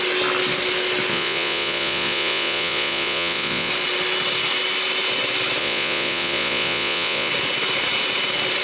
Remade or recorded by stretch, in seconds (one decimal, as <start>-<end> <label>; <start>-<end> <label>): 0.0-1.1 recorded; 1.1-3.7 remade; 3.7-5.6 recorded; 5.6-7.3 remade; 7.3-8.6 recorded